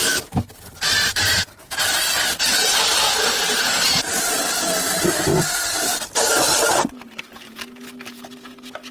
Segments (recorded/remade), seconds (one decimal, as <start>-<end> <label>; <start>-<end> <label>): 0.0-8.9 recorded